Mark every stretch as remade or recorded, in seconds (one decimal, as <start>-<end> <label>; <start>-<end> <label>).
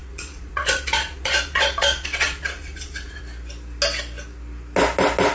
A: 0.0-3.2 remade; 3.2-5.3 recorded